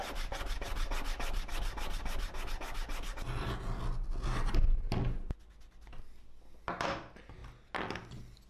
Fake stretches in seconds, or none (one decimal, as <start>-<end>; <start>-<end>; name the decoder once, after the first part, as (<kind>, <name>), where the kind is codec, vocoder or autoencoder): none